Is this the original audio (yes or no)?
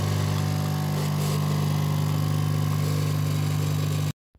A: yes